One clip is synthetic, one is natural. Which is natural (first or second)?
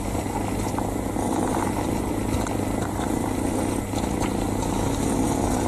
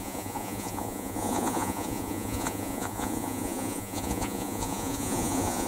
first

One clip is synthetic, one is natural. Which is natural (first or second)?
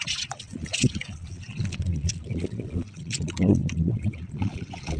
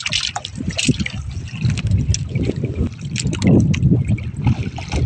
second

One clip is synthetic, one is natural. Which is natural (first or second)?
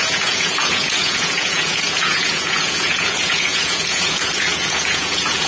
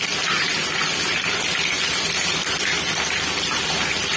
second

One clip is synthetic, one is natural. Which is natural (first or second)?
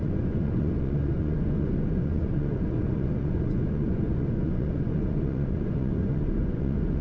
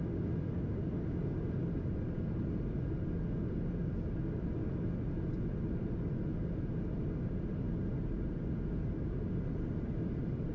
second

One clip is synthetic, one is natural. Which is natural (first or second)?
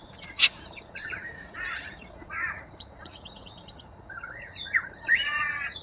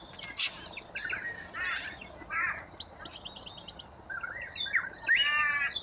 second